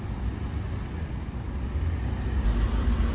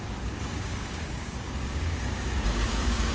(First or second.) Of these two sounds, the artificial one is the second